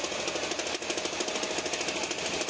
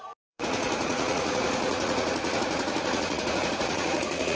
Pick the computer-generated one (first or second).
second